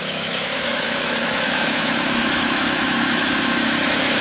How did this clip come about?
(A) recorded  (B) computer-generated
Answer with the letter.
B